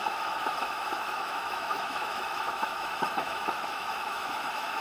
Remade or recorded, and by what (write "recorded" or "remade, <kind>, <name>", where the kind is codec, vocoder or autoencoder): remade, autoencoder, DAC-VAE